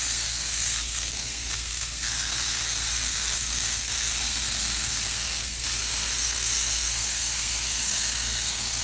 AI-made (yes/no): yes